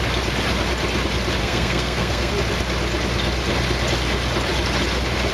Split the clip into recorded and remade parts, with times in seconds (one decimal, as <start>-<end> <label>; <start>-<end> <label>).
0.0-1.4 recorded; 1.4-2.3 remade; 2.3-5.3 recorded